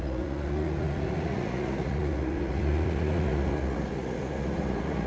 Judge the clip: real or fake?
fake